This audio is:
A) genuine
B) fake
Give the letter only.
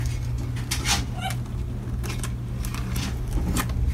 A